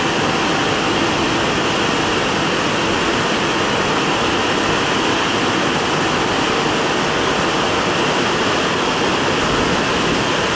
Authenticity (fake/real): real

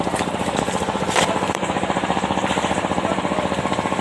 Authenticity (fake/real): fake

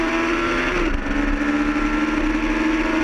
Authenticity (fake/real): real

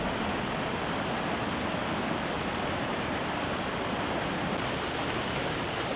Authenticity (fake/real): real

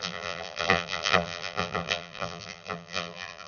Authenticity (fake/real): fake